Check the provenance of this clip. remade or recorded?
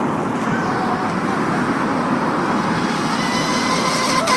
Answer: recorded